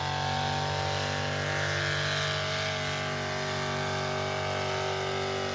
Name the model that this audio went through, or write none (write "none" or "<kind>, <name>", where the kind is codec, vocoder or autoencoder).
none